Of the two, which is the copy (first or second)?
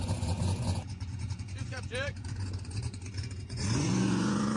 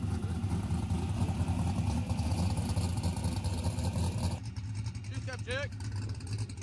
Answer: first